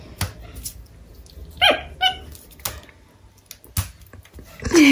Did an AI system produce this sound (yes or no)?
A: no